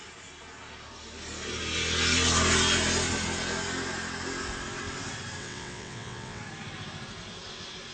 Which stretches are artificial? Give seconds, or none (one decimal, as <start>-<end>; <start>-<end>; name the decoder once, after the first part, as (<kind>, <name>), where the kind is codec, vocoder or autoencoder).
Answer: 5.4-6.4 (vocoder, WaveNeXt)